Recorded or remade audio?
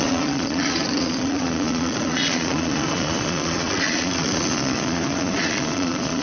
remade